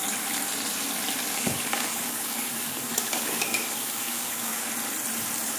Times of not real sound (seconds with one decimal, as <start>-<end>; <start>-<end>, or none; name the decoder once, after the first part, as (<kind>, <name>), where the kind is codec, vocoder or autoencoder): 1.3-4.7 (codec, DAC)

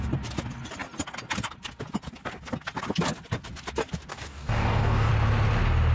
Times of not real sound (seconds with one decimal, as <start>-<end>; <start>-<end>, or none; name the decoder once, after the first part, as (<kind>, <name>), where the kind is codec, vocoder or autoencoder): 4.1-5.1 (codec, DAC)

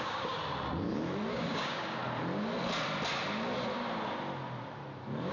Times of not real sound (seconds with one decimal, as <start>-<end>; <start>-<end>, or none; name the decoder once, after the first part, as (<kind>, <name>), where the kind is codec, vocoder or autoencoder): 0.0-0.4 (codec, DAC); 1.3-2.0